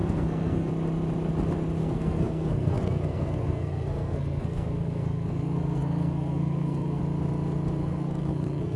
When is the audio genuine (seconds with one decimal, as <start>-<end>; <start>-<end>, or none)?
0.7-1.8; 7.0-7.8